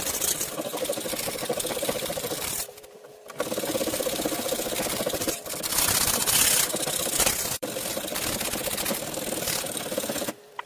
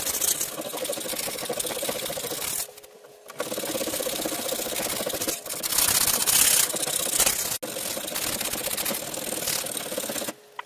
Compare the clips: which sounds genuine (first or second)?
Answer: second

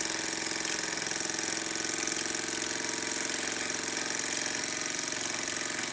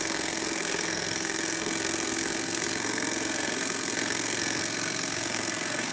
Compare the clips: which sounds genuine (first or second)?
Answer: first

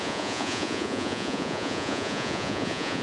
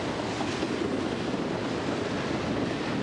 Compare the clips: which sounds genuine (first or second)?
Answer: second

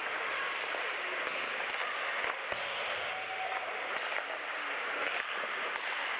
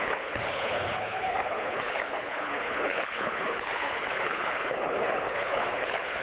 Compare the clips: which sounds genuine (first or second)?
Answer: first